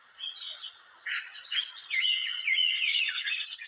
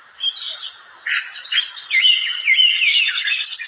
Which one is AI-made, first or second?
first